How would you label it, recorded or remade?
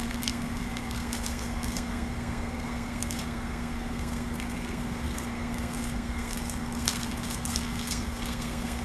remade